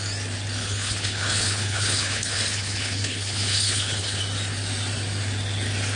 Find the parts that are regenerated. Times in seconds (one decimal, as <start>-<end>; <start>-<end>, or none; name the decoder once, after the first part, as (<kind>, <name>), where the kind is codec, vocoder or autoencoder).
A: 0.6-4.2 (codec, HILCodec)